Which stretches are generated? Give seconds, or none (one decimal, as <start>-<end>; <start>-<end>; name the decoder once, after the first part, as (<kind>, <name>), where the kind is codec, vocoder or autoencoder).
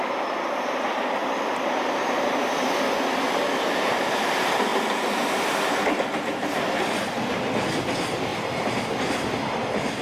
none